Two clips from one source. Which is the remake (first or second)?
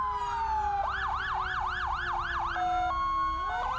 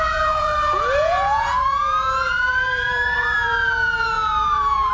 second